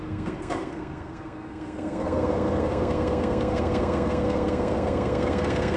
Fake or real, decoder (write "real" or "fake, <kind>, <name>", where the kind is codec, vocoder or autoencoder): fake, codec, SNAC